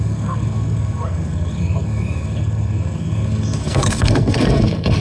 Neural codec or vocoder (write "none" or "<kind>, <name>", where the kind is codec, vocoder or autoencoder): codec, SNAC